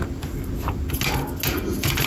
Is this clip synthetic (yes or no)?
no